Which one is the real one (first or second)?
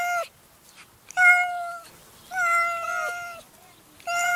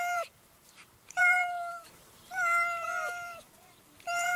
first